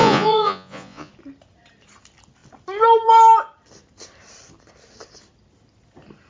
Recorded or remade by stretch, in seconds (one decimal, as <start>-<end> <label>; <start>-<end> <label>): 0.0-1.1 remade; 1.1-6.3 recorded